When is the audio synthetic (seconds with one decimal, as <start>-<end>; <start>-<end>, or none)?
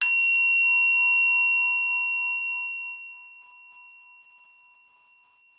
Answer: none